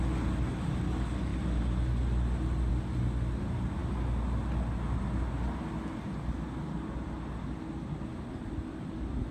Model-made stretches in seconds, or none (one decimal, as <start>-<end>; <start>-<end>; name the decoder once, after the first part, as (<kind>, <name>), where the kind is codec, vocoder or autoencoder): none